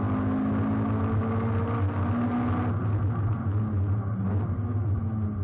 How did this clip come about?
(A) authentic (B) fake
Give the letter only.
A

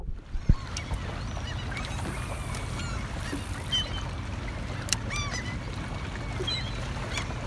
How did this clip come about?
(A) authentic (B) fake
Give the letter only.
A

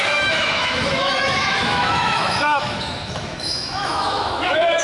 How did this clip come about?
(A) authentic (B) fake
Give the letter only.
B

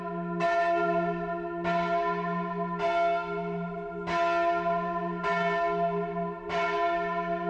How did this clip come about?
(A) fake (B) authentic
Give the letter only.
B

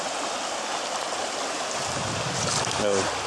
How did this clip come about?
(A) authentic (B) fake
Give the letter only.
A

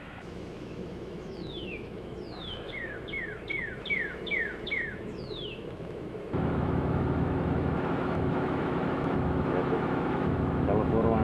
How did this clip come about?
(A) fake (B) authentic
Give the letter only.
A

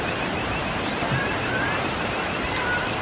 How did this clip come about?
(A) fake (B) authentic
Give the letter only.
B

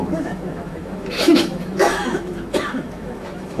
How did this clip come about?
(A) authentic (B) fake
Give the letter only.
B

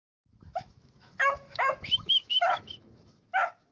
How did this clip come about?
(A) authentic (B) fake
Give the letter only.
B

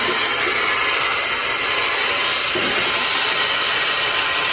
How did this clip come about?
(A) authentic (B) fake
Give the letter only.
A